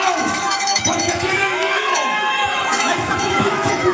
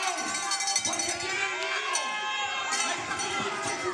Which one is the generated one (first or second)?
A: first